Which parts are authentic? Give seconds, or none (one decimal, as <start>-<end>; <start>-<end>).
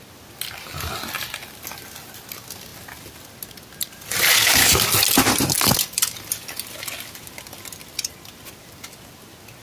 0.0-9.6